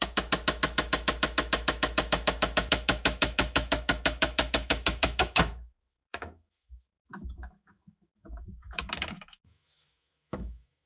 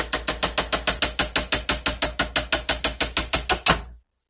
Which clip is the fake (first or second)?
first